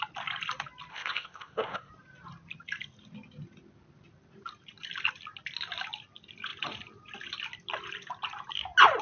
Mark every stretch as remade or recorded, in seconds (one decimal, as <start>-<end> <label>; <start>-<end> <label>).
0.0-0.9 recorded; 0.9-1.9 remade; 1.9-9.0 recorded